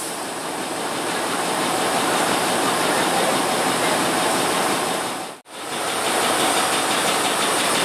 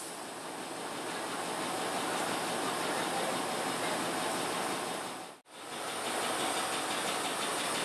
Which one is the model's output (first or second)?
first